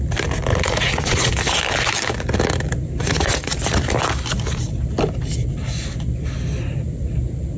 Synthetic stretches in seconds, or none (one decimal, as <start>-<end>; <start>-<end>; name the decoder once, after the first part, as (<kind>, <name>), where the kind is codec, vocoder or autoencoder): 0.5-1.3 (vocoder, Vocos); 3.0-3.6